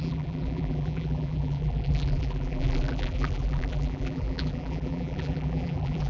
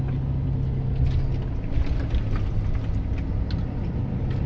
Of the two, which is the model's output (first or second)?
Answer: first